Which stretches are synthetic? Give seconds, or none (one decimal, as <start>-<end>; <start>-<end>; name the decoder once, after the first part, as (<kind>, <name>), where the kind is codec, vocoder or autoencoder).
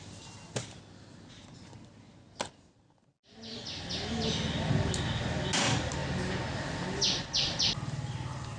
none